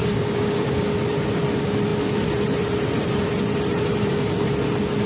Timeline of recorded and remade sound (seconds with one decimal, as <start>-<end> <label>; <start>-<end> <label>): 0.0-0.8 remade; 0.8-5.1 recorded